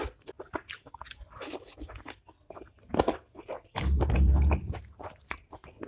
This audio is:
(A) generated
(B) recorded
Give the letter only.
B